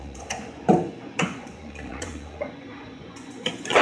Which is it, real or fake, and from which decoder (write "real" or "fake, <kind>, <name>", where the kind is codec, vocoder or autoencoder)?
fake, vocoder, Vocos